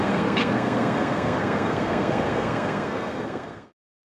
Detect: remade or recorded remade